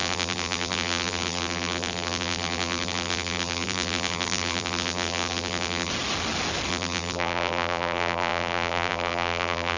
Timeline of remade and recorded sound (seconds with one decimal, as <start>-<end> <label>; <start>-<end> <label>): 0.0-5.9 remade; 5.9-6.7 recorded; 6.7-9.8 remade